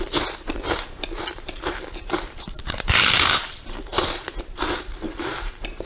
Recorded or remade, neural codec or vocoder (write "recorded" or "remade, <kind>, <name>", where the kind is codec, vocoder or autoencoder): remade, vocoder, BigVGAN v2